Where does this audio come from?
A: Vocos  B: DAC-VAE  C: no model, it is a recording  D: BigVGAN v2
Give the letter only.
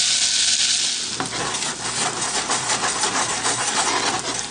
C